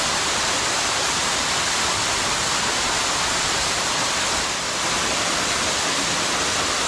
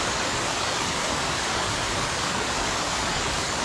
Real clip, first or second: first